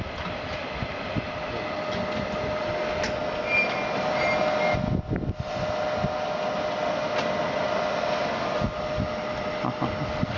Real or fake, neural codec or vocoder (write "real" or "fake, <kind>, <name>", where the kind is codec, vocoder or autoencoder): real